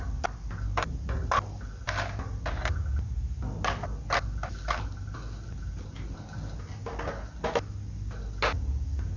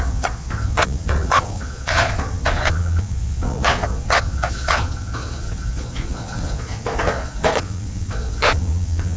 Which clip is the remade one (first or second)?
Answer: second